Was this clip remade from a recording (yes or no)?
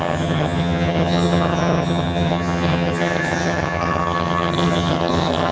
yes